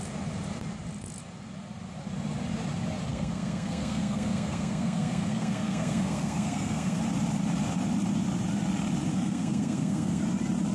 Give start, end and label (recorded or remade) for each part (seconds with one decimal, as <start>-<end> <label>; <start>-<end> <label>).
0.0-3.1 recorded; 3.1-7.0 remade; 7.0-9.1 recorded; 9.1-10.2 remade; 10.2-10.7 recorded